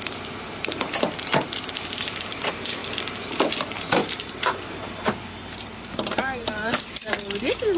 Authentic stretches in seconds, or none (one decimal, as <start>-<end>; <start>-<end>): 2.8-3.3